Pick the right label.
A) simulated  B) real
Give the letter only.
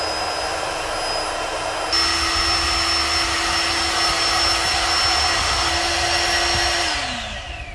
B